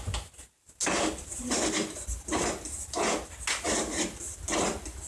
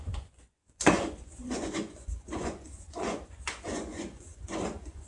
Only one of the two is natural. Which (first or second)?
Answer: first